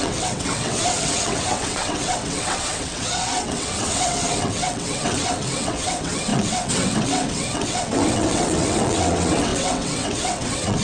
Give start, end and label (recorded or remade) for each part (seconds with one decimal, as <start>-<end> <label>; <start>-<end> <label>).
0.0-10.8 remade